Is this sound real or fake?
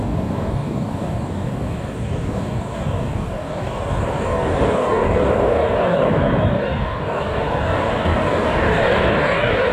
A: fake